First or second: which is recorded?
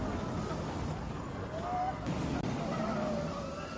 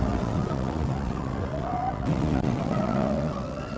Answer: first